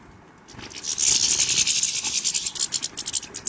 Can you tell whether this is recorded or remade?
recorded